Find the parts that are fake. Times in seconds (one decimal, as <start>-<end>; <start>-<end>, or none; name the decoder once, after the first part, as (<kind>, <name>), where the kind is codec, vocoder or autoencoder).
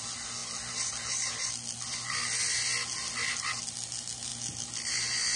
none